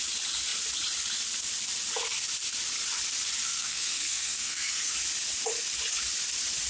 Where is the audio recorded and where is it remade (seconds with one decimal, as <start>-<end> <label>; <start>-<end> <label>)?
0.0-3.4 recorded; 3.4-4.9 remade; 4.9-6.7 recorded